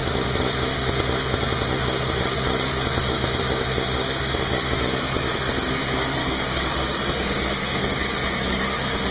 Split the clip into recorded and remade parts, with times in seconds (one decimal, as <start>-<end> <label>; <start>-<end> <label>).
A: 0.0-6.2 recorded; 6.2-7.0 remade; 7.0-7.7 recorded; 7.7-8.2 remade; 8.2-9.1 recorded